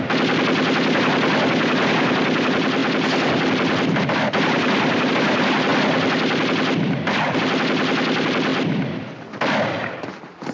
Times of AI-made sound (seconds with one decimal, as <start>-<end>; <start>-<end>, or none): none